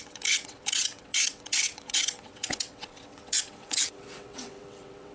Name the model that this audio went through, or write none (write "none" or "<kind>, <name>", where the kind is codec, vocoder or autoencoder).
vocoder, WaveNeXt